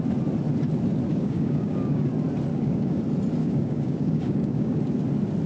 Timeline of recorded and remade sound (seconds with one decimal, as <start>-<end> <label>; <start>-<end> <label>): 0.0-1.1 recorded; 1.1-2.1 remade; 2.1-2.5 recorded; 2.5-3.0 remade; 3.0-3.4 recorded; 3.4-4.8 remade; 4.8-5.5 recorded